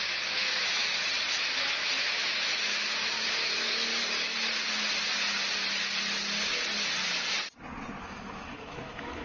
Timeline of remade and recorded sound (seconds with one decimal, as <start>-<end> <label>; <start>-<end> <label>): 0.0-0.8 remade; 0.8-1.3 recorded; 1.3-3.9 remade; 3.9-8.0 recorded; 8.0-9.2 remade

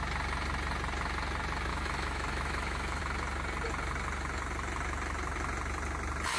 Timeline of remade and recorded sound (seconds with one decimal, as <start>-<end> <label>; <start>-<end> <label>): 0.0-1.7 recorded; 1.7-3.0 remade; 3.0-6.4 recorded

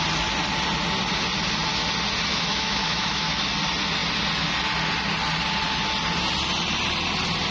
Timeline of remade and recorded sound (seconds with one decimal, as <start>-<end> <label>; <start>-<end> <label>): 0.0-2.3 recorded; 2.3-3.4 remade; 3.4-7.5 recorded

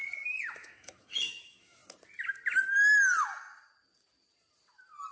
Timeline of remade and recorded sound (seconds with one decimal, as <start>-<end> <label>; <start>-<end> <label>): 0.0-0.5 recorded; 0.5-1.8 remade; 1.8-5.1 recorded